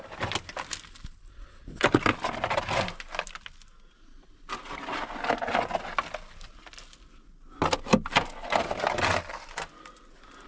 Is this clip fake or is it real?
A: real